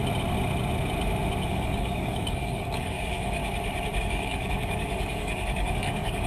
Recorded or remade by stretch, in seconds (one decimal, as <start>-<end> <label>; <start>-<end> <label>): 0.0-1.5 recorded; 1.5-3.4 remade; 3.4-4.0 recorded; 4.0-6.3 remade